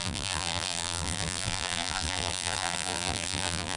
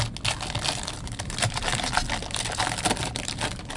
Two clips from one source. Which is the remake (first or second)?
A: first